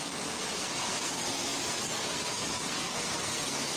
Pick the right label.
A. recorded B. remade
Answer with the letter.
B